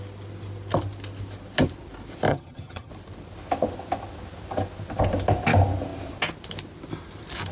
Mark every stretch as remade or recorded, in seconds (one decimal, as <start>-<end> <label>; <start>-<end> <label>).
0.0-2.3 recorded; 2.3-2.9 remade; 2.9-7.5 recorded